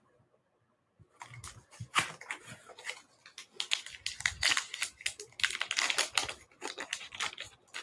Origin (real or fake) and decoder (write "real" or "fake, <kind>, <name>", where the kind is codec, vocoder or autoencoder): real